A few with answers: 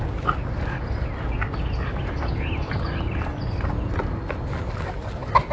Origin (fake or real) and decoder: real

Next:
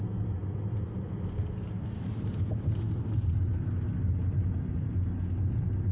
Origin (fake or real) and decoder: real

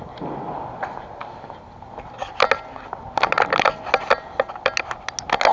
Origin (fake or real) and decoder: real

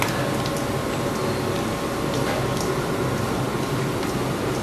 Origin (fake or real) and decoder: real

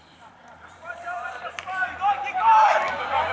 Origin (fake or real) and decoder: fake, vocoder, BigVGAN v2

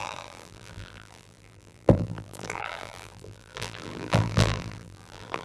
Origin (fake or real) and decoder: fake, vocoder, BigVGAN v2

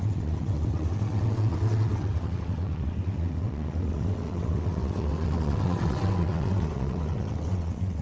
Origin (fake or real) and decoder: fake, vocoder, WaveNeXt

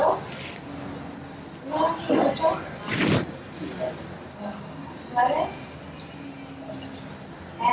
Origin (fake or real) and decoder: real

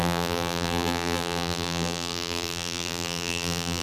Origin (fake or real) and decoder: fake, vocoder, BigVGAN v2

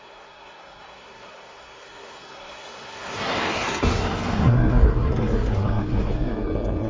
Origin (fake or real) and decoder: fake, codec, SNAC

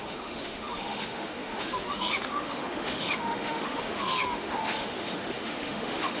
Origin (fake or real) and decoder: fake, autoencoder, DAC-VAE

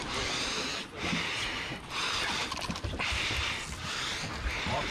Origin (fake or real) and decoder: real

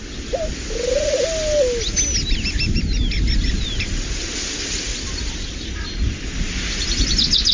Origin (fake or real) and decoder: real